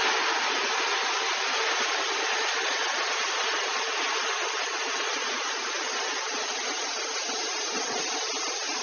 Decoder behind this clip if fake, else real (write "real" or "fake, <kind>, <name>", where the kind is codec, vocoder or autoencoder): real